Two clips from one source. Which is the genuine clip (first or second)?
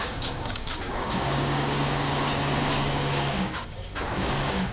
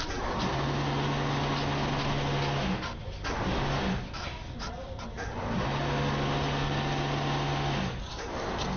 second